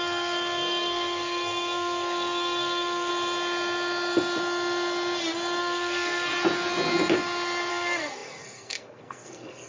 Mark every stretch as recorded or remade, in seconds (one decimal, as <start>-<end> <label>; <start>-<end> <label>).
0.0-3.1 remade; 3.1-5.6 recorded; 5.6-6.3 remade; 6.3-7.7 recorded; 7.7-9.7 remade